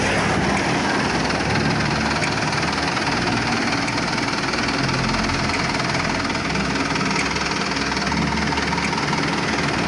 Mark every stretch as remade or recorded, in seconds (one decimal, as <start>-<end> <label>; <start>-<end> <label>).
0.0-9.9 recorded